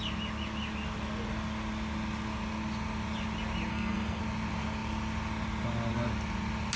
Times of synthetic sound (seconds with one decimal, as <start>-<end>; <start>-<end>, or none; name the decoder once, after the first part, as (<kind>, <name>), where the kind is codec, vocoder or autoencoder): 3.7-4.2 (codec, SNAC)

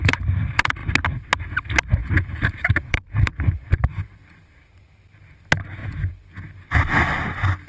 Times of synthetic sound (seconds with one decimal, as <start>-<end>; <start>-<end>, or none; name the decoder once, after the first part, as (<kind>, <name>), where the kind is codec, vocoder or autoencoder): 2.0-4.2 (vocoder, BigVGAN v2); 5.8-6.5